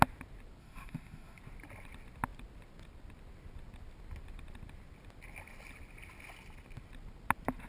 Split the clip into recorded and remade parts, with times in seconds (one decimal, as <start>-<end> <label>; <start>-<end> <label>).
0.0-0.6 recorded; 0.6-1.4 remade; 1.4-7.7 recorded